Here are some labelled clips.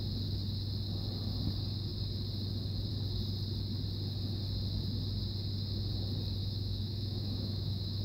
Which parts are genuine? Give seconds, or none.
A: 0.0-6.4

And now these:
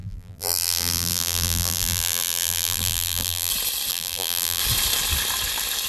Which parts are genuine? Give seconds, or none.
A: 3.5-3.9; 4.6-5.9

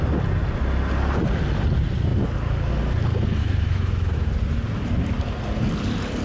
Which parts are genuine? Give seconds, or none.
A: 0.0-3.4; 4.3-6.2

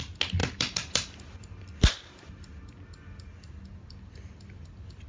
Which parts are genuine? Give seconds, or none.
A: 0.0-0.4; 3.5-5.1

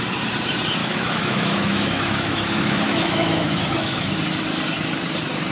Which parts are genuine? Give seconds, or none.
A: 0.0-0.8; 4.1-5.5

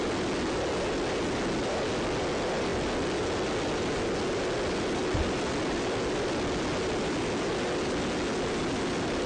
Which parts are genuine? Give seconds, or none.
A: 0.0-9.3

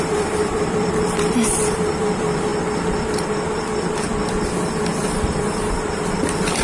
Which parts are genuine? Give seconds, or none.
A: 2.5-3.5; 4.1-5.0